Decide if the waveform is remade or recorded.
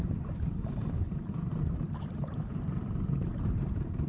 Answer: remade